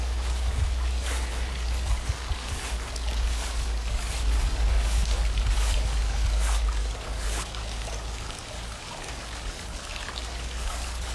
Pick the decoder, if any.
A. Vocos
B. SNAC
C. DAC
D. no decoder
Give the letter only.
C